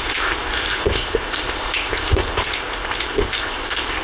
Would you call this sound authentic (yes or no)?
no